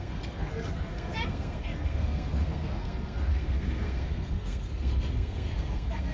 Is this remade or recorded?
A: remade